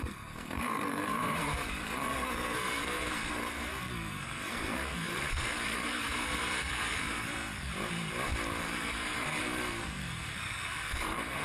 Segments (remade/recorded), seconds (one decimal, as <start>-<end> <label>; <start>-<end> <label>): 0.0-7.7 remade; 7.7-8.6 recorded; 8.6-11.4 remade